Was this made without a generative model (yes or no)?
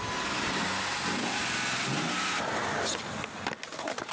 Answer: yes